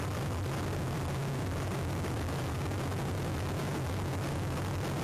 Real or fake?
real